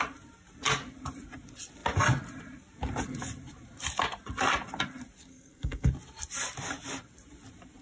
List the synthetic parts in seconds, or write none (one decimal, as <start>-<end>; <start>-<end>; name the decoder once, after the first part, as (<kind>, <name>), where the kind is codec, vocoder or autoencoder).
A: 5.3-5.9 (codec, SNAC)